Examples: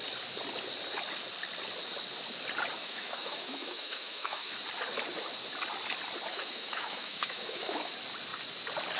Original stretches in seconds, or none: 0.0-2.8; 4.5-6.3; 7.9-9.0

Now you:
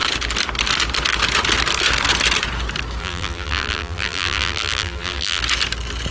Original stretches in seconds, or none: 0.0-3.0; 5.4-6.1

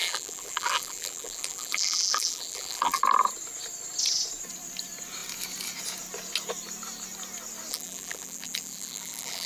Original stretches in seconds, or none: 3.0-7.7

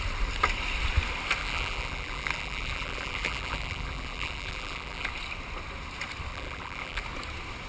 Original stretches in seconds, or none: 0.0-1.4; 5.1-6.3; 7.0-7.7

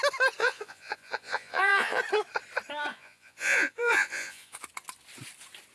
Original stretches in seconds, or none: 0.0-0.4; 2.0-2.9; 4.6-5.7

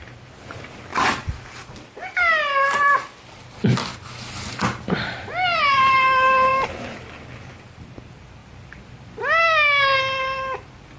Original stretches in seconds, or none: 0.0-11.0